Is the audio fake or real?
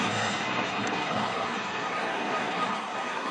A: fake